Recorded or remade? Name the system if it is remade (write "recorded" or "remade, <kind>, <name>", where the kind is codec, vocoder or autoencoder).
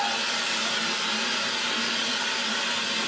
recorded